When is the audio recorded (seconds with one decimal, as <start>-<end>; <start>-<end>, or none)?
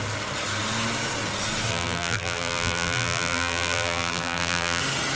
0.0-1.7; 4.8-5.2